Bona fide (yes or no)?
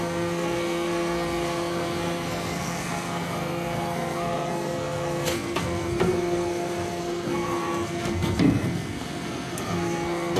no